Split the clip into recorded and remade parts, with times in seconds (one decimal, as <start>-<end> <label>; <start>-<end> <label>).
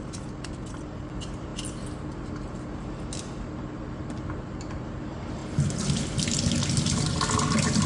0.0-7.9 recorded